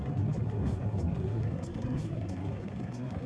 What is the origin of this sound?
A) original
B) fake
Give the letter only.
B